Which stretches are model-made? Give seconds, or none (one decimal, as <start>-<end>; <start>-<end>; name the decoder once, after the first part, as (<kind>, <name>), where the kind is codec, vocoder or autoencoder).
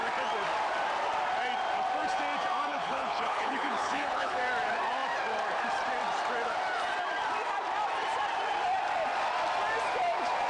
2.7-4.4 (codec, HILCodec)